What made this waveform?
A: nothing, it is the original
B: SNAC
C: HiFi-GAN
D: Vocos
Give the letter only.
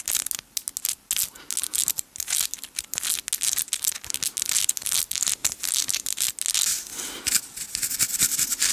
A